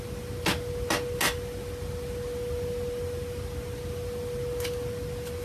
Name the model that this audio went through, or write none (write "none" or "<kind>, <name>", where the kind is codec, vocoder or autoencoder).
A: none